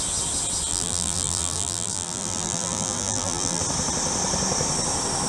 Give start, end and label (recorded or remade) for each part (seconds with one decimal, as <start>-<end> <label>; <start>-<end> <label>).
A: 0.0-0.7 recorded; 0.7-3.6 remade; 3.6-5.3 recorded

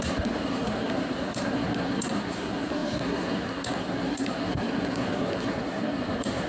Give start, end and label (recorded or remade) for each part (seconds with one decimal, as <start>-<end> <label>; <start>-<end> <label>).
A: 0.0-6.5 remade

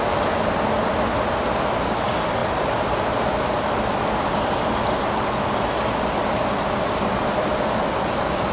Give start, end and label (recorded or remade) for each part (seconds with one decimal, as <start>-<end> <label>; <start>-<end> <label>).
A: 0.0-8.5 recorded

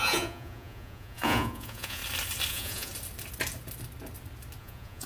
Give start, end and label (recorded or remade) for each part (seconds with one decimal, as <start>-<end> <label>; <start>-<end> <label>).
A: 0.0-2.0 remade; 2.0-2.5 recorded; 2.5-2.9 remade; 2.9-4.6 recorded; 4.6-5.1 remade

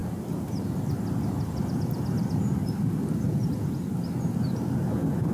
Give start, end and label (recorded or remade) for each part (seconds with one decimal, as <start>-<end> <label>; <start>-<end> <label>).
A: 0.0-5.3 recorded

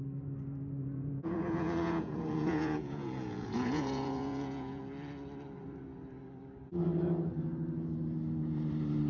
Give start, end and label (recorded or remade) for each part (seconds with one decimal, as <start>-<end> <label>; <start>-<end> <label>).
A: 0.0-0.8 recorded; 0.8-4.8 remade; 4.8-9.1 recorded

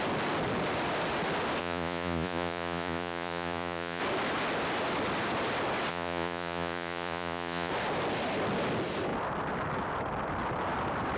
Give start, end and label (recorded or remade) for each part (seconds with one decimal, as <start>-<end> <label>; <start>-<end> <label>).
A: 0.0-1.6 recorded; 1.6-4.0 remade; 4.0-5.9 recorded; 5.9-7.7 remade; 7.7-11.2 recorded

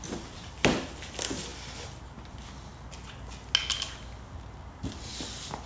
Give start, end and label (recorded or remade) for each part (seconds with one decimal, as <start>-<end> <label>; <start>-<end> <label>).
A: 0.0-5.7 recorded